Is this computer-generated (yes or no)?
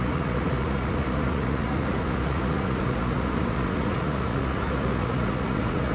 yes